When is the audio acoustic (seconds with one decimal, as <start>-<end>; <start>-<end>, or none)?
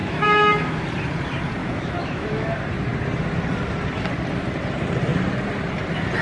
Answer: 0.8-1.6; 2.5-6.2